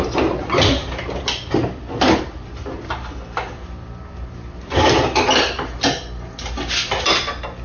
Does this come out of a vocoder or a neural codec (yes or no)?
no